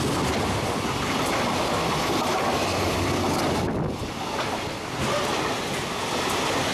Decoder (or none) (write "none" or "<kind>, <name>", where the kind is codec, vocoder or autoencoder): none